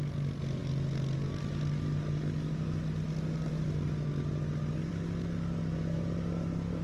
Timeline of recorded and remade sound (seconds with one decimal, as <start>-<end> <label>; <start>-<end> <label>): 0.0-6.8 recorded

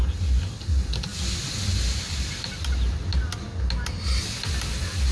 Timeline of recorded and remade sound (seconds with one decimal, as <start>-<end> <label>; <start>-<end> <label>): 0.0-5.1 recorded

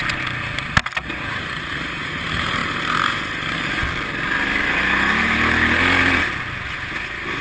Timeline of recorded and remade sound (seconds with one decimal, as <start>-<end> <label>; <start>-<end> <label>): 0.0-7.4 recorded

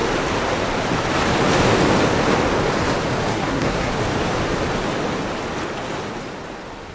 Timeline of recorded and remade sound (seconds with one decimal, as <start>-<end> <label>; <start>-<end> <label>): 0.0-3.3 recorded; 3.3-3.9 remade; 3.9-6.9 recorded

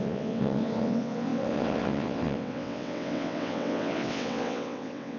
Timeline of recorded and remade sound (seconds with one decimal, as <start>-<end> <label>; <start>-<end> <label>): 0.0-5.2 remade

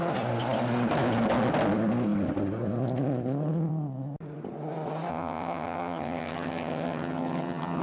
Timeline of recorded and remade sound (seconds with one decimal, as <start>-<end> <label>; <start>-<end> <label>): 0.0-5.1 recorded; 5.1-7.8 remade

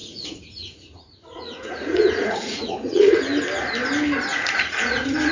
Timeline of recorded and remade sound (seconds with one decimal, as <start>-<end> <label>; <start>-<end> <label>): 0.0-3.2 remade; 3.2-4.3 recorded; 4.3-5.3 remade